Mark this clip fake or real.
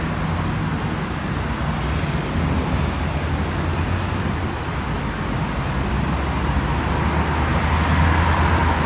real